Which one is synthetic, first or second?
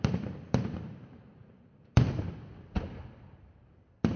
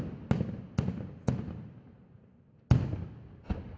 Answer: first